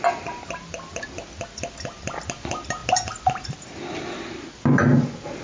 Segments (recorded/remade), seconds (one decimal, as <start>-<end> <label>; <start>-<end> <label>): 0.0-5.4 recorded